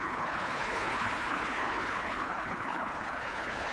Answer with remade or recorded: remade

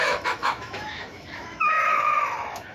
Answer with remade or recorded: remade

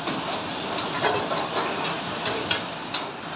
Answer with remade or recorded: recorded